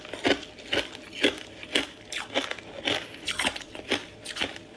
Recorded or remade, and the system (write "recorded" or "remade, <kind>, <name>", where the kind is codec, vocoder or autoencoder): recorded